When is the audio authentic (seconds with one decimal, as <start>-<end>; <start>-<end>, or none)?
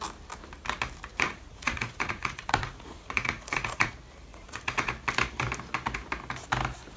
0.0-1.1; 3.9-4.3; 4.9-7.0